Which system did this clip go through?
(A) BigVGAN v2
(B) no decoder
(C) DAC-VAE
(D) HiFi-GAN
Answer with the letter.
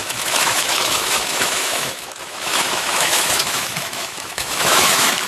C